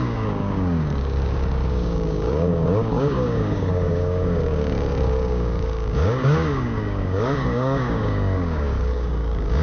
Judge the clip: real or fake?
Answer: fake